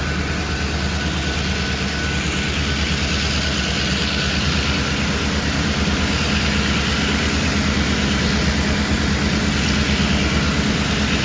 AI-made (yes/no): no